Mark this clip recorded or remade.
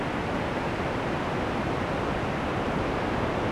recorded